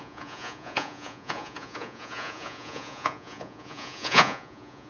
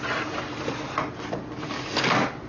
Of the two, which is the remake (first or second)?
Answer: first